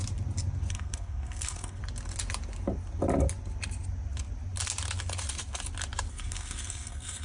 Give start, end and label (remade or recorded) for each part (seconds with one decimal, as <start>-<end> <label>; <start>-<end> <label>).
0.0-0.7 recorded; 0.7-1.8 remade; 1.8-6.1 recorded; 6.1-7.2 remade